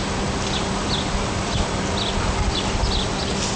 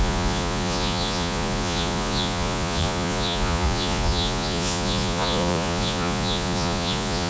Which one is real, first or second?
first